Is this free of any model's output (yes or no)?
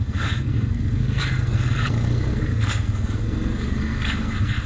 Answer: no